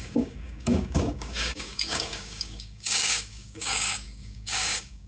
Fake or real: fake